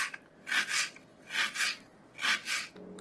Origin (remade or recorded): recorded